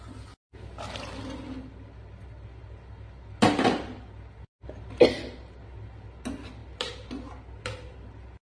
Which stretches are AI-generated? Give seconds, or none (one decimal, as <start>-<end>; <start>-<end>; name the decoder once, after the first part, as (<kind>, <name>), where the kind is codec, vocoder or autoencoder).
6.6-7.1 (vocoder, BigVGAN v2)